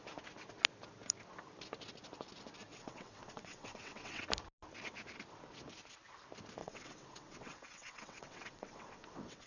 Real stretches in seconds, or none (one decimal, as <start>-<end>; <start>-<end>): 0.0-2.7; 4.2-6.6

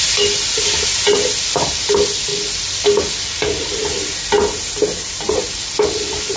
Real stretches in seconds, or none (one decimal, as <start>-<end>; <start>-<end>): 0.0-6.4

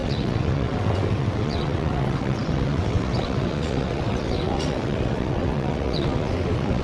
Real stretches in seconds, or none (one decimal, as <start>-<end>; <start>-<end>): none